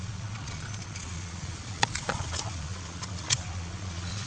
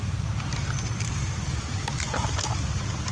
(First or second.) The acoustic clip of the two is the second